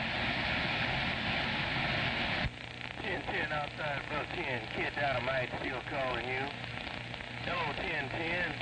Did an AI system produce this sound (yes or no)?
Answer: no